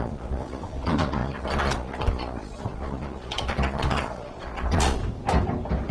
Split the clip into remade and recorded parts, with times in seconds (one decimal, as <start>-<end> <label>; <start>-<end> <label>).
0.0-5.0 remade; 5.0-5.9 recorded